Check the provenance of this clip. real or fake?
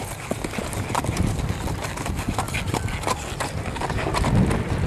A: real